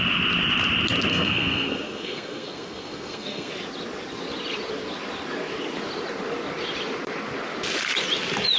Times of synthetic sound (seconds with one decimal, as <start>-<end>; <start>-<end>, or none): 1.1-3.5